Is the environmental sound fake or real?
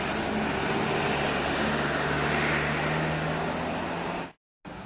real